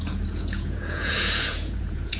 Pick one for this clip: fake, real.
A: fake